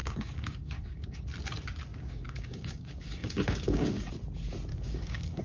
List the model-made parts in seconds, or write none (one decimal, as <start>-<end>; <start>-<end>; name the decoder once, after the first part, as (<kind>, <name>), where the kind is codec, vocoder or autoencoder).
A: 0.0-1.2 (codec, DAC); 1.9-4.1; 4.7-5.4